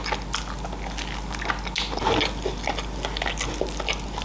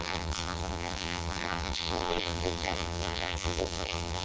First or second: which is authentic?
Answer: first